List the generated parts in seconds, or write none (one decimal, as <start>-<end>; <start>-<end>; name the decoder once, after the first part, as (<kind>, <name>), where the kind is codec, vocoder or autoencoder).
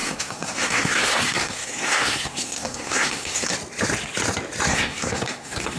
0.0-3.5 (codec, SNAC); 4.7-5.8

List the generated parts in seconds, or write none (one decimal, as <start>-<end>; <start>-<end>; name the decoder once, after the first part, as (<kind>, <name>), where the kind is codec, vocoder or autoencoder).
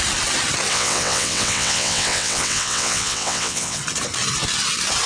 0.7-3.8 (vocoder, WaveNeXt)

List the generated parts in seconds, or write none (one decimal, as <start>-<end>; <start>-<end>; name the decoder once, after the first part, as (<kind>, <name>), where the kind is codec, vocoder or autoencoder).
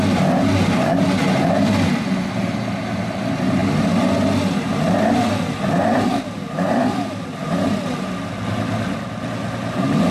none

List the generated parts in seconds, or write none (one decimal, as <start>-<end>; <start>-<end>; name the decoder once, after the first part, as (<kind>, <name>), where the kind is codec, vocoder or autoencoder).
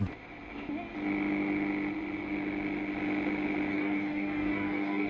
3.7-5.1 (codec, DAC)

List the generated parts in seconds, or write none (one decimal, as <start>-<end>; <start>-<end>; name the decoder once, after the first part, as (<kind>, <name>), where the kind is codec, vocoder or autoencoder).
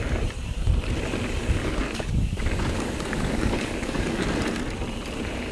1.6-4.2 (codec, DAC)